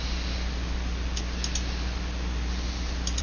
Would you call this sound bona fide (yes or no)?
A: yes